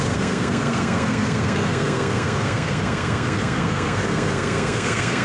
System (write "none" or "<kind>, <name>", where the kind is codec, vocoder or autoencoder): codec, SNAC